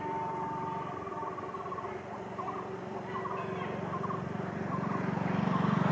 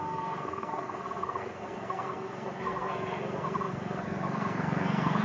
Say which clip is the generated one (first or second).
second